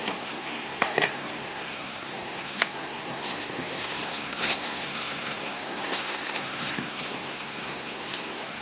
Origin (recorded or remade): remade